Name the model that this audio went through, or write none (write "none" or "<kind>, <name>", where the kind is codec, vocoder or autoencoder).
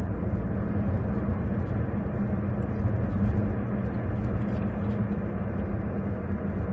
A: none